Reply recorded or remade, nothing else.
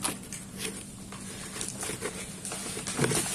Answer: recorded